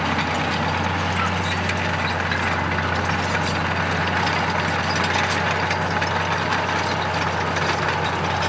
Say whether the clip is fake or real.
real